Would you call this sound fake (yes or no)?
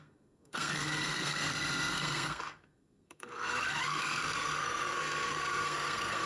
yes